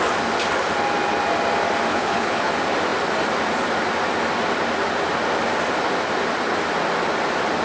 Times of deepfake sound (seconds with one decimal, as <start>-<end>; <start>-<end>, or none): 1.9-2.5